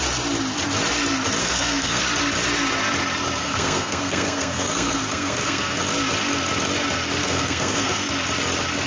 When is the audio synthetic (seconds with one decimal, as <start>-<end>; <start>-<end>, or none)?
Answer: 1.4-2.0; 3.4-5.8; 7.2-8.1